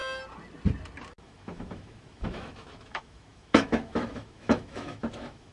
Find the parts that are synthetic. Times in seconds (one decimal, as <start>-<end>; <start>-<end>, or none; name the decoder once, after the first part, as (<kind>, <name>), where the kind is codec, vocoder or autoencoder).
1.2-5.5 (autoencoder, DAC-VAE)